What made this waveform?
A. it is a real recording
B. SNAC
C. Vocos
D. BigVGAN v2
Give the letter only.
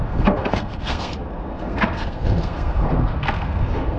B